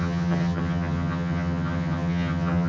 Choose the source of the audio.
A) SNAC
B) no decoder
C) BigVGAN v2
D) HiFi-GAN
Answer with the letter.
D